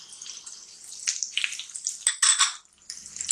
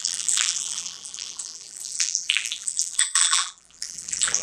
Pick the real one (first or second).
first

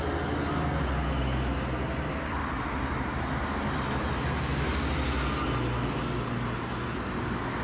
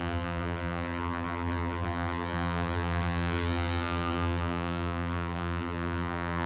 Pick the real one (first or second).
first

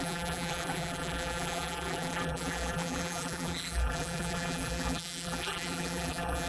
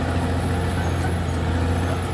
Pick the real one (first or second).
second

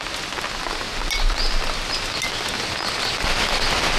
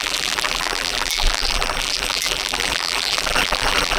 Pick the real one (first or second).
first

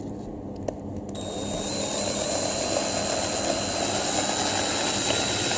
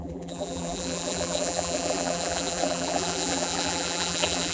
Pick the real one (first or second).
first